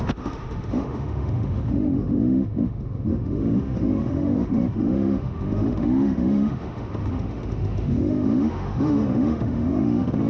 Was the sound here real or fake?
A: fake